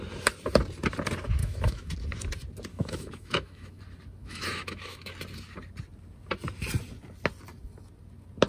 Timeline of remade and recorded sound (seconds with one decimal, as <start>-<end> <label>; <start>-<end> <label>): 0.0-1.4 recorded; 1.4-1.9 remade; 1.9-2.7 recorded; 2.7-3.8 remade; 3.8-4.2 recorded; 4.2-5.1 remade; 5.1-8.5 recorded